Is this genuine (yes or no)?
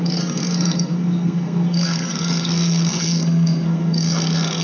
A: no